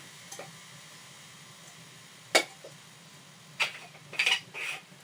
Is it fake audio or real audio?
real